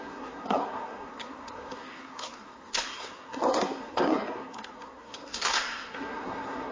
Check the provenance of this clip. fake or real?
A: fake